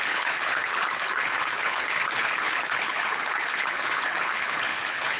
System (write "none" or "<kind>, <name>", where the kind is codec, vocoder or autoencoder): codec, HILCodec